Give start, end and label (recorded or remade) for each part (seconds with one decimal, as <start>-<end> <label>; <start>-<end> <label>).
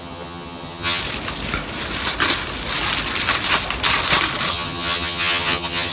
0.0-1.0 remade; 1.0-4.5 recorded; 4.5-5.9 remade